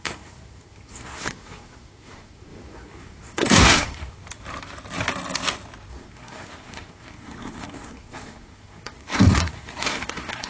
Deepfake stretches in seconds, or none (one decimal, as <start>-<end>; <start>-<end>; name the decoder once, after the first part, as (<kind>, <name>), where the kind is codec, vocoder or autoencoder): 0.0-4.2 (codec, SNAC); 5.9-10.5